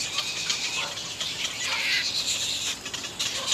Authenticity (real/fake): real